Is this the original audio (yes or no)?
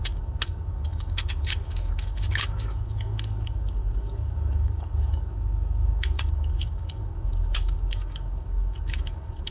no